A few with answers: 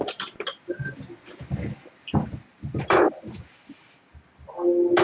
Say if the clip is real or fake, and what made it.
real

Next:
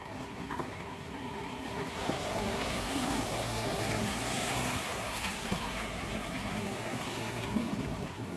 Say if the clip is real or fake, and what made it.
fake, codec, SNAC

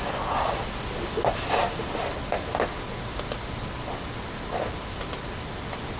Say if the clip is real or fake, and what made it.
real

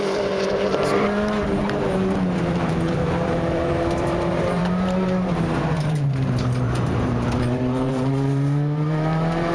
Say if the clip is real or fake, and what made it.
fake, vocoder, BigVGAN v2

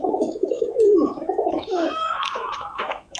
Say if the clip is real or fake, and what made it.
fake, autoencoder, DAC-VAE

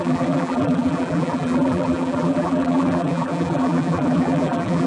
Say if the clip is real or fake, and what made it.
fake, vocoder, BigVGAN v2